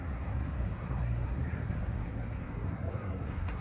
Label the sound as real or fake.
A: fake